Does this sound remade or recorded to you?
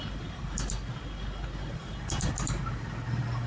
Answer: recorded